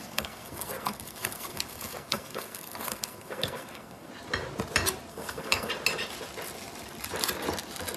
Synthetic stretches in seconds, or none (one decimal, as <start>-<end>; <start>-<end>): 0.0-4.1; 5.1-5.7